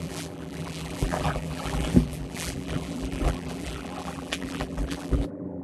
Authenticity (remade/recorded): remade